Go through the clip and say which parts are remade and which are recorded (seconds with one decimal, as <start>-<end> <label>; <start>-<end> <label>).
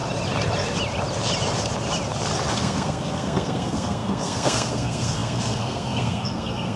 0.0-2.5 recorded; 2.5-6.8 remade